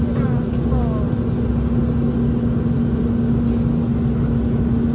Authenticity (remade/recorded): recorded